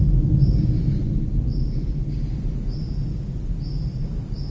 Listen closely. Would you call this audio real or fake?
real